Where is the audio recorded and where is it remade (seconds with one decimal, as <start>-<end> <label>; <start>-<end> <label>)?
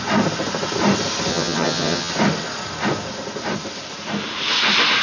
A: 0.0-1.3 recorded; 1.3-2.1 remade; 2.1-5.0 recorded